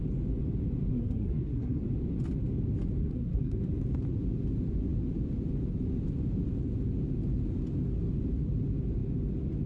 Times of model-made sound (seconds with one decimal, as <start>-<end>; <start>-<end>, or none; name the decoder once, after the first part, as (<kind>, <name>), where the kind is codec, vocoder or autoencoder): 0.9-1.8 (codec, SNAC); 3.0-3.6